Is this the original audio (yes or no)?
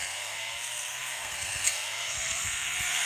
no